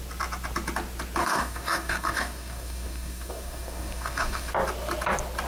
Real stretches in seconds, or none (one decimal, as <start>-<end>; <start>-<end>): 0.0-1.2; 4.5-5.5